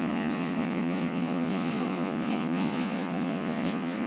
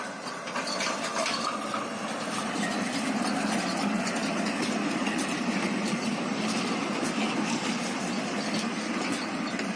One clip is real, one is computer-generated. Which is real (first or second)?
second